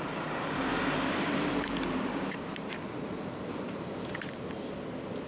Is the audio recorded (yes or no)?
yes